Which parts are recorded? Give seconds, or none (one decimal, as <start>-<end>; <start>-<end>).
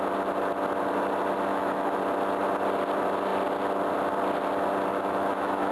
0.0-1.5; 2.0-4.9